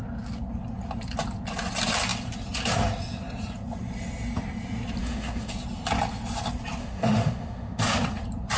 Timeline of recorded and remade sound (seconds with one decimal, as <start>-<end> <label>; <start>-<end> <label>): 0.0-5.0 recorded; 5.0-5.5 remade; 5.5-6.8 recorded; 6.8-7.8 remade; 7.8-8.6 recorded

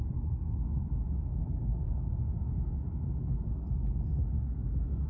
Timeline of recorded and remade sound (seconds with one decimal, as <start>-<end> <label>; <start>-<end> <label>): 0.0-0.8 recorded; 0.8-3.5 remade; 3.5-4.6 recorded; 4.6-5.1 remade

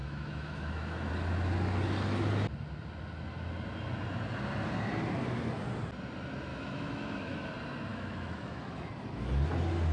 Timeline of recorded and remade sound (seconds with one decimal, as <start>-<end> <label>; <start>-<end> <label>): 0.0-1.1 remade; 1.1-6.5 recorded; 6.5-7.5 remade; 7.5-7.9 recorded; 7.9-8.9 remade; 8.9-9.9 recorded

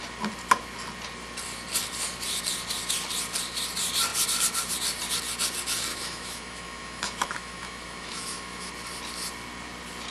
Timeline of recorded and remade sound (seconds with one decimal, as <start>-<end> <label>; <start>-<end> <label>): 0.0-5.9 recorded; 5.9-8.7 remade; 8.7-10.1 recorded

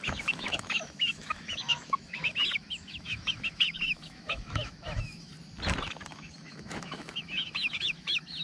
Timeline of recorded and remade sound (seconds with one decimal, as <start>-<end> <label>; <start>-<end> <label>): 0.0-5.3 remade; 5.3-6.1 recorded; 6.1-8.4 remade

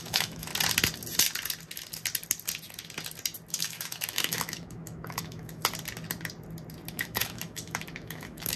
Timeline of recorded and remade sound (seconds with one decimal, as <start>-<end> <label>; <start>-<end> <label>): 0.0-0.5 remade; 0.5-3.5 recorded; 3.5-5.6 remade; 5.6-6.9 recorded; 6.9-8.6 remade